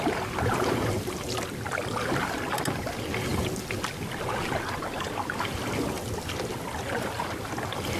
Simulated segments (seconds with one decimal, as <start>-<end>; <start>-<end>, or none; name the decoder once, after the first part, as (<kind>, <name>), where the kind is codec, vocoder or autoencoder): none